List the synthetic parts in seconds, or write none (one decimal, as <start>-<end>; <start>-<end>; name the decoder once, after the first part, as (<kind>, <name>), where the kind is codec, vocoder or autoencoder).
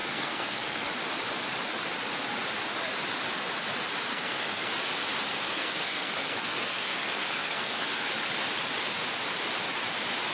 0.0-0.9 (codec, SNAC); 4.1-4.7; 5.3-8.1